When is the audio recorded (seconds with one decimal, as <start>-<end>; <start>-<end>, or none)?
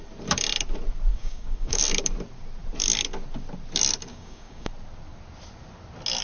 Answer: 0.0-1.1; 1.8-4.1; 4.7-6.2